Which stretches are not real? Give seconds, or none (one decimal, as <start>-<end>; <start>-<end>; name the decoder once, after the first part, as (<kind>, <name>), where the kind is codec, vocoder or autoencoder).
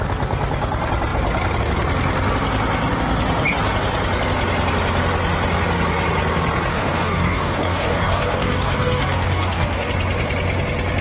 6.7-9.9 (codec, DAC)